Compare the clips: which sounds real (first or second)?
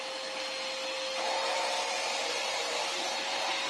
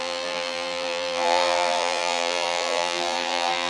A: first